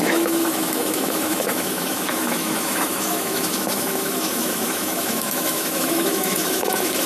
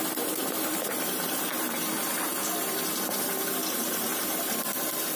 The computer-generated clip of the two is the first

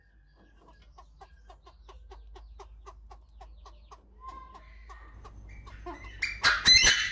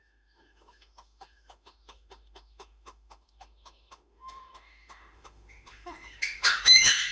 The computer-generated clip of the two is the second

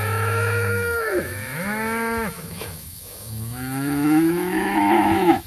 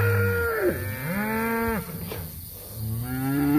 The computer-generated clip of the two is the first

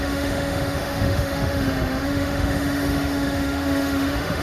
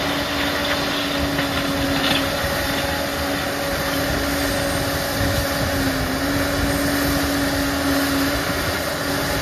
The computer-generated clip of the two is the first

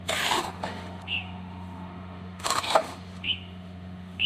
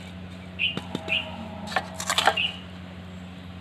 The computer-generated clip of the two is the first